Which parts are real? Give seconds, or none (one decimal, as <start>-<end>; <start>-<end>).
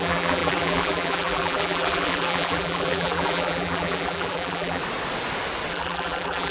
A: 4.8-5.7